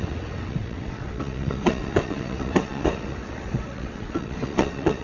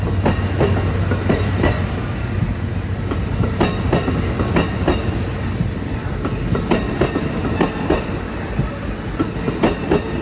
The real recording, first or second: second